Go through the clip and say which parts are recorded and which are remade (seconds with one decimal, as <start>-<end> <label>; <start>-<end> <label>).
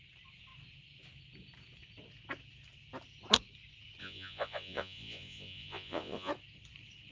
0.0-4.0 recorded; 4.0-6.3 remade; 6.3-7.1 recorded